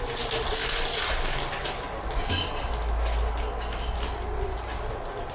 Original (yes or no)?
yes